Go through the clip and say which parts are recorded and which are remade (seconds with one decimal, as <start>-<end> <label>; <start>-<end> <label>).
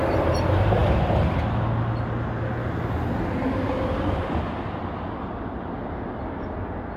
0.0-7.0 recorded